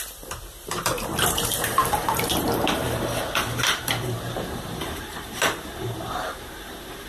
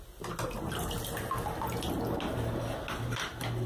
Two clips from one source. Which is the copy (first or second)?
first